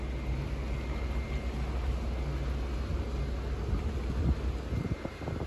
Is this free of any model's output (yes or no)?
yes